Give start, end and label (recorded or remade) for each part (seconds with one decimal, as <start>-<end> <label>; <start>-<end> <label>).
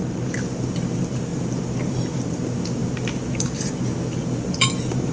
0.0-5.1 remade